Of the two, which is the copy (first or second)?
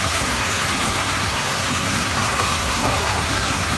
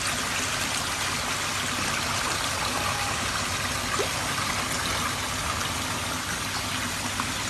first